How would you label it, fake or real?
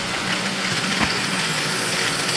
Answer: fake